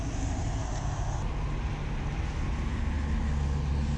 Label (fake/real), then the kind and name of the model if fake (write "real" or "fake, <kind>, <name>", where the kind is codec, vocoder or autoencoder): real